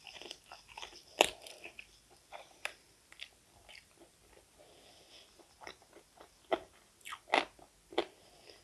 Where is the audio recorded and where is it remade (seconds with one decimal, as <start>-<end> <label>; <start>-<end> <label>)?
0.0-0.9 recorded; 0.9-5.3 remade; 5.3-8.6 recorded